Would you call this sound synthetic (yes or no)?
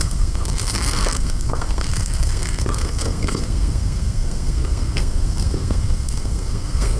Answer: yes